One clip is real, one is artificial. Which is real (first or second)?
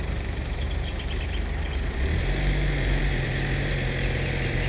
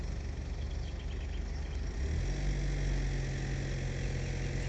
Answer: second